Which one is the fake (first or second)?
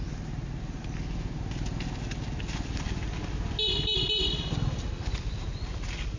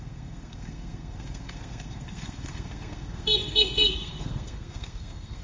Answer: second